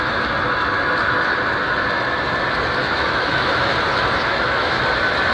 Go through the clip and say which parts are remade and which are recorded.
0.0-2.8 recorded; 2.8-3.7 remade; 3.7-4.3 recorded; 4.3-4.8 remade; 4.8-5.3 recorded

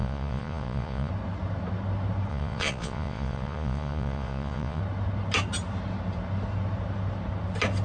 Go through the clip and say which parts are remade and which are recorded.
0.0-1.1 remade; 1.1-2.3 recorded; 2.3-4.8 remade; 4.8-7.8 recorded